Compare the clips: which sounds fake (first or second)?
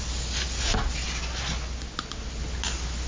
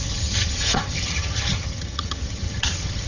second